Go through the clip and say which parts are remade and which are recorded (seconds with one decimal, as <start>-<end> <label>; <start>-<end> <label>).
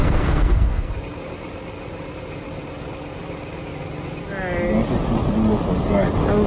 0.0-0.9 remade; 0.9-6.5 recorded